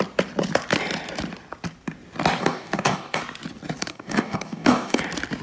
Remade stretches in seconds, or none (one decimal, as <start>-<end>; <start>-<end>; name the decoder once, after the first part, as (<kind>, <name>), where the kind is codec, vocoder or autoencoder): 2.4-3.2 (codec, DAC); 3.9-5.0